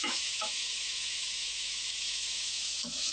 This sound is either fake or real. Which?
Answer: fake